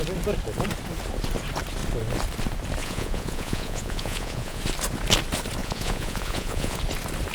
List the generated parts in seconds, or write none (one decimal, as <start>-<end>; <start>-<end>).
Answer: 2.8-4.6; 5.6-6.8